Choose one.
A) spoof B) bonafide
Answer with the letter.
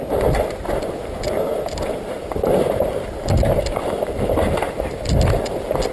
B